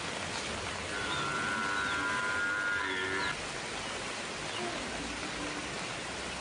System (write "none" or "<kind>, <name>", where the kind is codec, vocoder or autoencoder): none